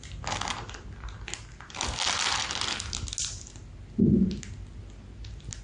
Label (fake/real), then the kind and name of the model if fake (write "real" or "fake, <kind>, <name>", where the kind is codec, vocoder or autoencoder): real